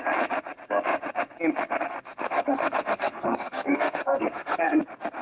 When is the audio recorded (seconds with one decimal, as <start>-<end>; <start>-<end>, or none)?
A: 0.0-2.2; 4.8-5.2